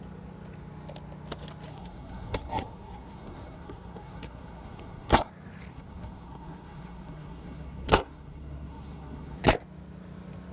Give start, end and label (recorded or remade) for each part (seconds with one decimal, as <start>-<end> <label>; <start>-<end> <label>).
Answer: 0.0-1.7 recorded; 1.7-5.3 remade; 5.3-5.7 recorded; 5.7-9.4 remade; 9.4-10.5 recorded